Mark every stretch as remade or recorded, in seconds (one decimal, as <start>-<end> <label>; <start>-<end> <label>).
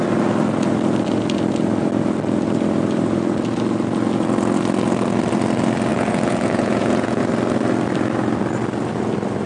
0.0-5.9 recorded; 5.9-7.2 remade; 7.2-9.5 recorded